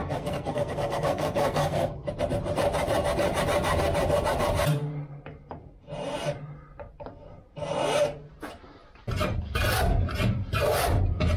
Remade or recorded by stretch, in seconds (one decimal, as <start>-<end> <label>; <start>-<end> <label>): 0.0-2.1 remade; 2.1-11.4 recorded